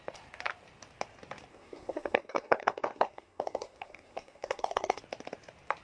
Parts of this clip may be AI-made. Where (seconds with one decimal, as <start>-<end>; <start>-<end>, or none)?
1.5-5.0